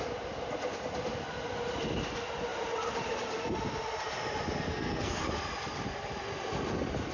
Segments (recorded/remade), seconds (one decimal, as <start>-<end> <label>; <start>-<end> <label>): 0.0-4.7 recorded; 4.7-5.2 remade; 5.2-7.1 recorded

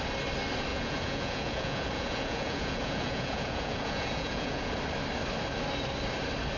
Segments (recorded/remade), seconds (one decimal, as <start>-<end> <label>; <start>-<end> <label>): 0.0-0.7 recorded; 0.7-4.7 remade; 4.7-6.6 recorded

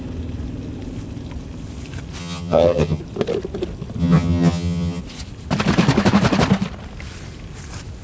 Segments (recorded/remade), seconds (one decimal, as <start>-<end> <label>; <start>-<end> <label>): 0.0-2.2 recorded; 2.2-3.0 remade; 3.0-4.0 recorded; 4.0-5.0 remade; 5.0-8.0 recorded

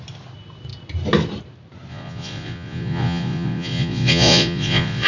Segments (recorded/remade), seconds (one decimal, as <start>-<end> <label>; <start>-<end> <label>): 0.0-1.9 recorded; 1.9-5.1 remade

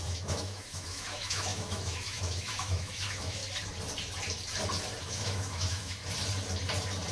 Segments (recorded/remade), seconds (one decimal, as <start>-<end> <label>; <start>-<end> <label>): 0.0-3.4 remade; 3.4-5.0 recorded; 5.0-6.0 remade; 6.0-7.1 recorded